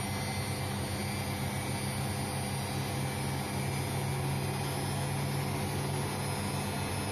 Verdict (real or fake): real